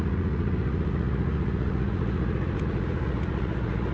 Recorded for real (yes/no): no